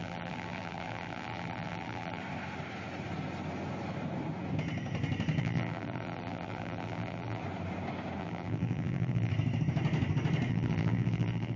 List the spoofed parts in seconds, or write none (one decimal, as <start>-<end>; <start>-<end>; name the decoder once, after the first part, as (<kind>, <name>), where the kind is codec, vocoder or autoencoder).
0.0-2.2 (vocoder, BigVGAN v2); 5.4-7.4; 8.2-9.3; 10.5-11.6